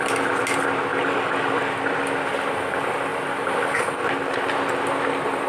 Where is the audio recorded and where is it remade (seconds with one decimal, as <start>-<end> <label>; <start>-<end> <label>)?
0.0-5.5 recorded